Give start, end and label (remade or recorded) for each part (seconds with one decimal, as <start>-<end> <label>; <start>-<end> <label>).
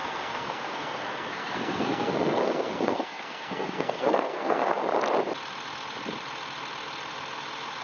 0.0-4.8 remade; 4.8-7.8 recorded